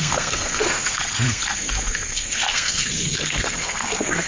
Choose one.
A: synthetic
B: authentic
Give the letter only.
A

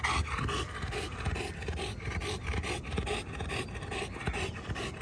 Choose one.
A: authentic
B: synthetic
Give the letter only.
A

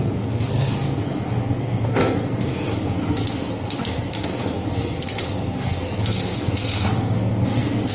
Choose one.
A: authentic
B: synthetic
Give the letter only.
B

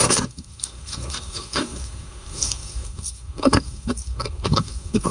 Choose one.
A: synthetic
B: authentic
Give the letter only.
A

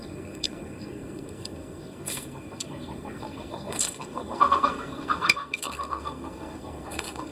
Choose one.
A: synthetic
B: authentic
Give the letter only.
A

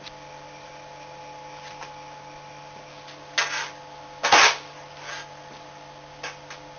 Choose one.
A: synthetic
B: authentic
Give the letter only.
B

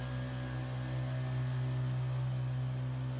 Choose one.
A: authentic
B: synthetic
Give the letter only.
A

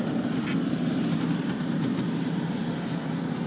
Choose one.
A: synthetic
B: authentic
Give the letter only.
B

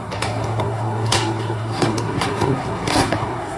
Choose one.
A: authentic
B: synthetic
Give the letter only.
B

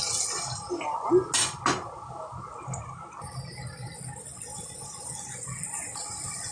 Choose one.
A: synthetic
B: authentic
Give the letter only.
B